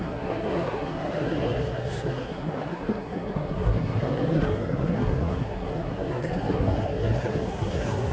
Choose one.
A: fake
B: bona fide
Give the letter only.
A